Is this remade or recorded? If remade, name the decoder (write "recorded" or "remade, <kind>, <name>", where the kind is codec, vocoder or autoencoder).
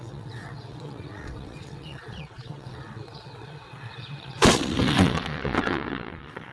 remade, vocoder, WaveNeXt